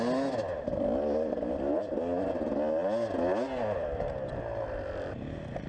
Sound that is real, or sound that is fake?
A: real